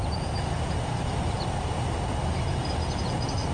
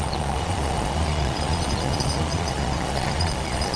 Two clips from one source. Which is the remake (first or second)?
second